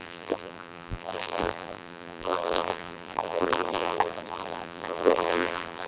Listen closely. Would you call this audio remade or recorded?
remade